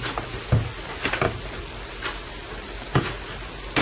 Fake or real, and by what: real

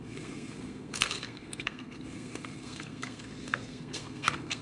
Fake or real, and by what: fake, codec, SNAC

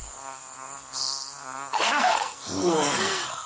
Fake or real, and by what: fake, codec, SNAC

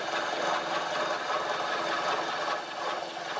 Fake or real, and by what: real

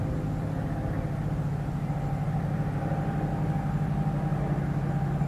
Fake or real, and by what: real